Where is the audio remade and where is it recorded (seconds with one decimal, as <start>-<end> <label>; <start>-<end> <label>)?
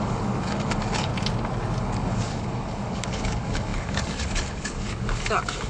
0.0-1.1 remade; 1.1-1.8 recorded; 1.8-5.7 remade